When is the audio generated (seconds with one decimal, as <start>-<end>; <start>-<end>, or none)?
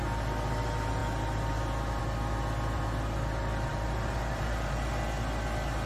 3.7-4.9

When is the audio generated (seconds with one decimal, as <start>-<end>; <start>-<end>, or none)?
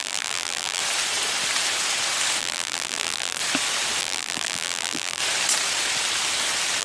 0.0-0.8; 2.4-3.4; 4.0-5.2